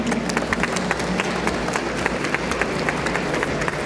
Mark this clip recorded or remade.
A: recorded